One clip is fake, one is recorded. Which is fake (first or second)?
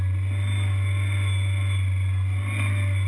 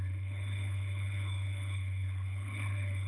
second